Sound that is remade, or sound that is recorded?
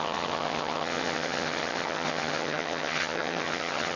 remade